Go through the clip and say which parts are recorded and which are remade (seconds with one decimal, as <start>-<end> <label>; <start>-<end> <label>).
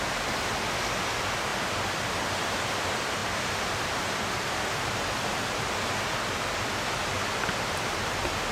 0.0-8.5 recorded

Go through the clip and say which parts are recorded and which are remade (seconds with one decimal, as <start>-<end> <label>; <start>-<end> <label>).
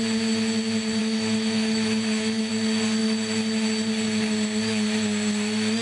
0.0-1.0 recorded; 1.0-2.5 remade; 2.5-5.8 recorded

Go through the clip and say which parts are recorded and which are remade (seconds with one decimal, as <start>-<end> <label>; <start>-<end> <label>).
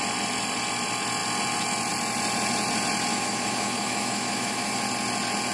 0.0-3.1 recorded; 3.1-4.8 remade; 4.8-5.5 recorded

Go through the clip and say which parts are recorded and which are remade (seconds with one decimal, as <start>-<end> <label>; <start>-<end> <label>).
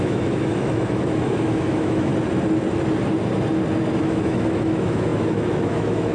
0.0-2.1 remade; 2.1-4.0 recorded; 4.0-6.1 remade